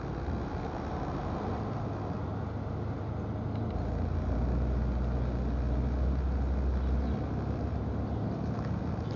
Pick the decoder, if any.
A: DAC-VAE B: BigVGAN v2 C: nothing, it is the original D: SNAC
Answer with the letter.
C